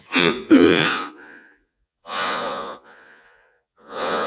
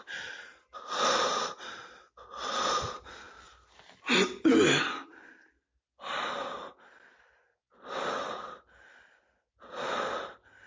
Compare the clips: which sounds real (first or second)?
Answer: second